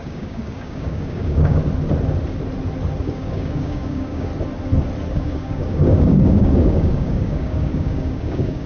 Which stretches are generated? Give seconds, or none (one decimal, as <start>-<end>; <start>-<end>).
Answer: 0.0-1.6; 3.0-4.3; 5.1-8.7